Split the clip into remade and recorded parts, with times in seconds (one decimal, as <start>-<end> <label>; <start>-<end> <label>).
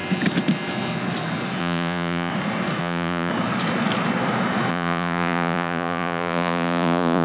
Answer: 0.0-1.6 recorded; 1.6-2.3 remade; 2.3-2.8 recorded; 2.8-3.3 remade; 3.3-4.7 recorded; 4.7-7.2 remade